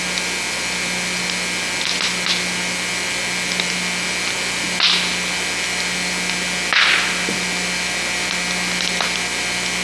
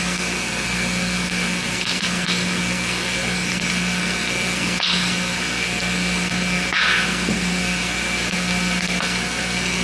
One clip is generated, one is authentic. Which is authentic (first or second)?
first